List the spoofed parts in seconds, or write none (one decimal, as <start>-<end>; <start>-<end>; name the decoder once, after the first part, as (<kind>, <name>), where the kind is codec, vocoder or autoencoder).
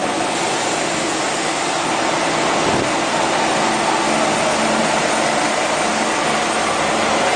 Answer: 0.0-0.7 (vocoder, Vocos)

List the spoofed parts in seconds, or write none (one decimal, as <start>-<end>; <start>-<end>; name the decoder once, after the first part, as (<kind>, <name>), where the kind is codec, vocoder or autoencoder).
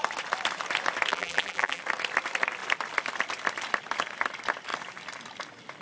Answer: 1.1-1.8 (vocoder, BigVGAN v2)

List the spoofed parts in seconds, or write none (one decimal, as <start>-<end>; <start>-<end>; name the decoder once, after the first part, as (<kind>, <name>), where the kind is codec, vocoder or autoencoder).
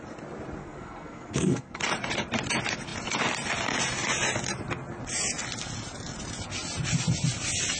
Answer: 0.6-1.8 (codec, SNAC)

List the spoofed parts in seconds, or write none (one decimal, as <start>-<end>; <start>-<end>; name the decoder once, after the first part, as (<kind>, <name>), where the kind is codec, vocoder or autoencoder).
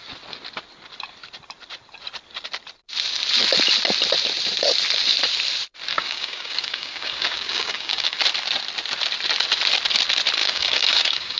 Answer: 5.9-8.2 (codec, DAC); 10.4-11.4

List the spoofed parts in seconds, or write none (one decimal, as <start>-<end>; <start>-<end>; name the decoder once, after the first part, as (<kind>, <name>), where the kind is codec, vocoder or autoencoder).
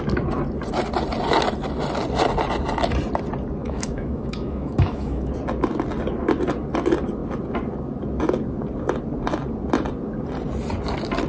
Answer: 3.6-5.3 (autoencoder, DAC-VAE)